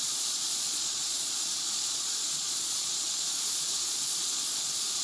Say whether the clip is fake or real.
fake